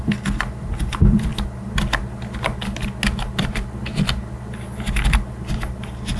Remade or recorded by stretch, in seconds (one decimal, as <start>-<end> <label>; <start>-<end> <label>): 0.0-6.2 recorded

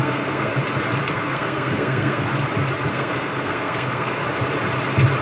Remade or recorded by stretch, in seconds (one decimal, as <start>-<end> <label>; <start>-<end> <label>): 0.0-0.5 remade; 0.5-1.1 recorded; 1.1-2.3 remade; 2.3-2.9 recorded; 2.9-4.2 remade; 4.2-5.2 recorded